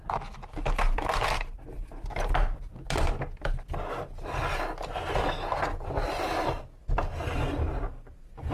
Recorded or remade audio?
recorded